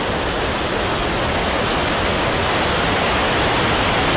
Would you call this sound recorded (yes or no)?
yes